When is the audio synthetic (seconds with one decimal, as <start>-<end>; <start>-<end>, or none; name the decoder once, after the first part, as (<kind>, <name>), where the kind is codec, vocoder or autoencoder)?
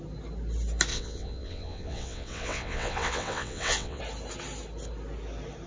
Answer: 0.9-4.0 (vocoder, WaveNeXt)